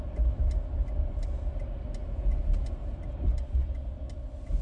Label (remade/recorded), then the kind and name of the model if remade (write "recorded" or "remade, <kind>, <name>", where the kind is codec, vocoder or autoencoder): recorded